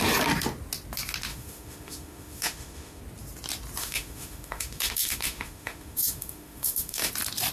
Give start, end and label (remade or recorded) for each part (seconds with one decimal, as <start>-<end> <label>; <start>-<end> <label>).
0.0-1.3 recorded; 1.3-3.0 remade; 3.0-3.8 recorded; 3.8-7.1 remade; 7.1-7.5 recorded